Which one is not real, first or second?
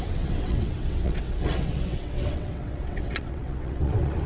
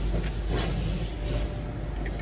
first